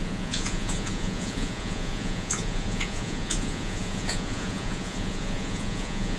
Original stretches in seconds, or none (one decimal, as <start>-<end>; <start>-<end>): none